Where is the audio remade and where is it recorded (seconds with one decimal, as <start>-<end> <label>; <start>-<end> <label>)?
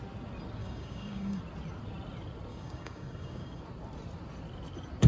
0.0-0.6 recorded; 0.6-1.4 remade; 1.4-2.5 recorded; 2.5-3.6 remade; 3.6-5.1 recorded